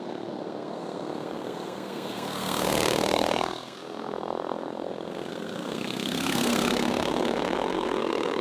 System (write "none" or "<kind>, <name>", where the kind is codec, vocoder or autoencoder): codec, SNAC